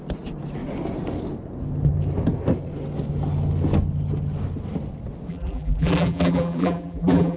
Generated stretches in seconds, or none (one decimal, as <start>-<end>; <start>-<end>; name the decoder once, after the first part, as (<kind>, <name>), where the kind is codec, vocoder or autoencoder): 5.3-7.4 (vocoder, BigVGAN v2)